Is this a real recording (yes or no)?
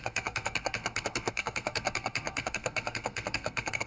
no